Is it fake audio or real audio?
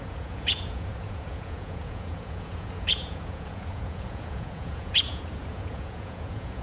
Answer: fake